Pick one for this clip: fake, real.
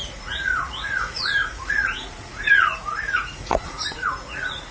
fake